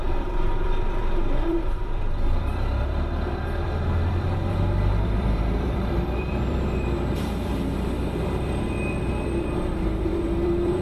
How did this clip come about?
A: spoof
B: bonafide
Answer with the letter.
A